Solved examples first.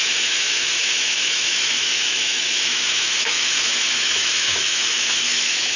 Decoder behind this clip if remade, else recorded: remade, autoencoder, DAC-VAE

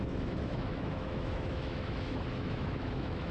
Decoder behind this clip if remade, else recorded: remade, autoencoder, DAC-VAE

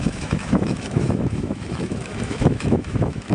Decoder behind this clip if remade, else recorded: remade, autoencoder, DAC-VAE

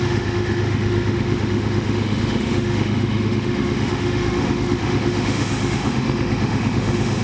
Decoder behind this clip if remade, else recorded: remade, autoencoder, DAC-VAE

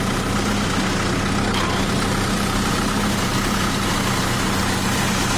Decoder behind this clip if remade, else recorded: recorded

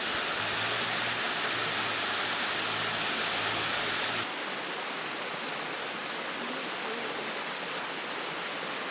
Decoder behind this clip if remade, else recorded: recorded